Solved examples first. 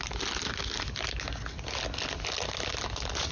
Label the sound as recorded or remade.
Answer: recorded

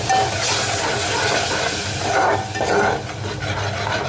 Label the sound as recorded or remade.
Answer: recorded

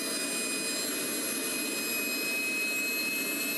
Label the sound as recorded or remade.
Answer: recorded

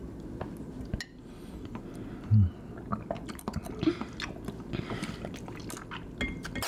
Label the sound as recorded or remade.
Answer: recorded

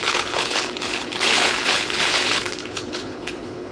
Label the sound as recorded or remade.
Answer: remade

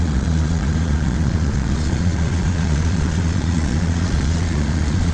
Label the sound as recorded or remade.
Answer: remade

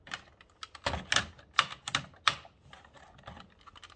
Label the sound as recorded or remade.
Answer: recorded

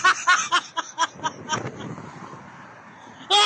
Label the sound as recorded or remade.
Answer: recorded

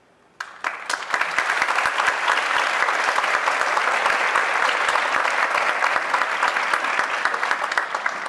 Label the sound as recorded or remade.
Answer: recorded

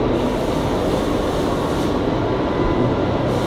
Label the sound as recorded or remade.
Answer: recorded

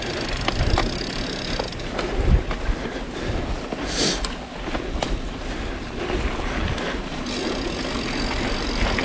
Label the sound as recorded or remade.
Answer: recorded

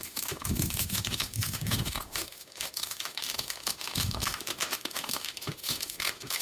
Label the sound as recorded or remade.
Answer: remade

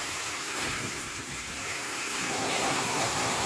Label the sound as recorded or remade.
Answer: remade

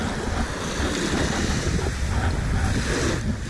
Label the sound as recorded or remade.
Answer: recorded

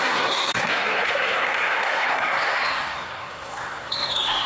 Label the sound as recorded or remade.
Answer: remade